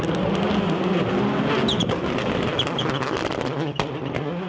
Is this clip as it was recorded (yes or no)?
yes